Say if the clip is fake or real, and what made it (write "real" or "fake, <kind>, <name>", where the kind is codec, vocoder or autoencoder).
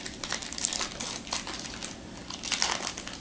real